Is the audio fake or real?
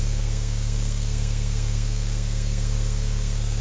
fake